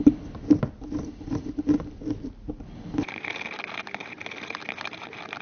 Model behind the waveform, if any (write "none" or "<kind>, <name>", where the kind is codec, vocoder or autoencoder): none